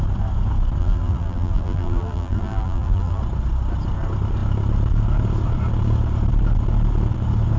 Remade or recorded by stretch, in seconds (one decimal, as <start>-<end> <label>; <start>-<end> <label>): 0.0-0.8 recorded; 0.8-3.2 remade; 3.2-7.6 recorded